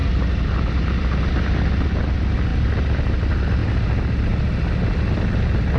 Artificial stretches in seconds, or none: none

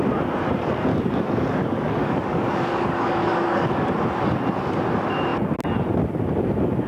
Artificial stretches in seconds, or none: 0.9-3.7 (codec, DAC)

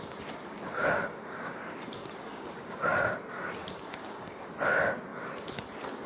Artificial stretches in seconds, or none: 0.8-3.1 (codec, DAC); 3.6-4.6

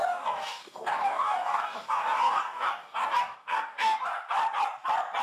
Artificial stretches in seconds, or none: 0.0-4.1 (codec, DAC)

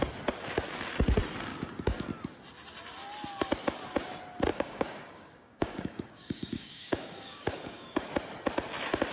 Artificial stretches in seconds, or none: 1.5-2.1 (codec, DAC); 4.5-8.1